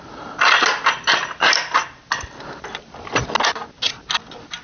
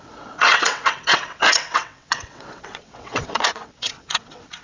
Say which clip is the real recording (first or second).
first